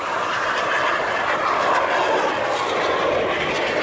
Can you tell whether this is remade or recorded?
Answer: recorded